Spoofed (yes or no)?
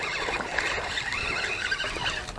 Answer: no